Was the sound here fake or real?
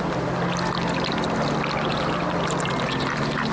real